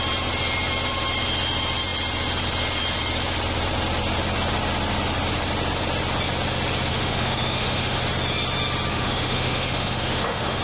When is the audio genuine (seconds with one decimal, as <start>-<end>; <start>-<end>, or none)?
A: 0.0-6.9; 8.0-8.9